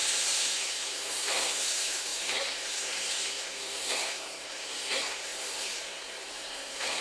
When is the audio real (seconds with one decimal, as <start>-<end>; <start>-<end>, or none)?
none